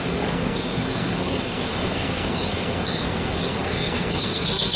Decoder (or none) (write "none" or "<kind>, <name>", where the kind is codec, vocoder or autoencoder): codec, SNAC